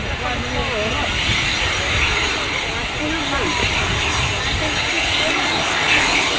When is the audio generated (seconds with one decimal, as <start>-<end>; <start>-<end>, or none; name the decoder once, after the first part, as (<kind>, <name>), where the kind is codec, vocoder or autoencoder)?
5.1-6.4 (codec, DAC)